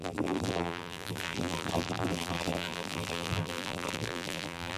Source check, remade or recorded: remade